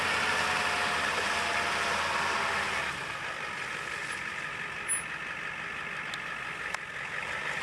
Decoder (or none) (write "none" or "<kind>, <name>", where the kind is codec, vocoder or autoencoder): none